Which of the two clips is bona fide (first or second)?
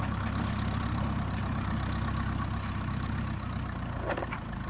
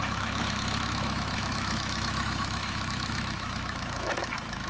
first